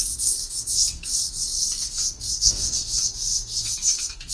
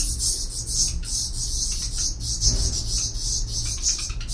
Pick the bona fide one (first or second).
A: second